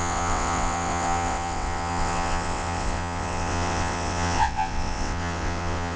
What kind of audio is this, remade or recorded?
remade